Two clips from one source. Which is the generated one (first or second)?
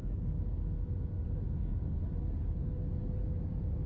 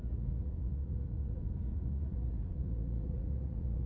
second